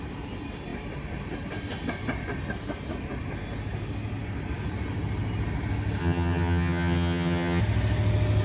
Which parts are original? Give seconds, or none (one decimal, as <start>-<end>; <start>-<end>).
0.0-6.0; 7.6-8.4